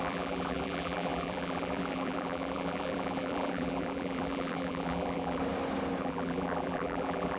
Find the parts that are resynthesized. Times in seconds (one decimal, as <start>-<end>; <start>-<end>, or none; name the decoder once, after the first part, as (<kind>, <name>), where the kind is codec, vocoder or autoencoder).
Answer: 0.0-5.4 (vocoder, BigVGAN v2); 6.0-7.4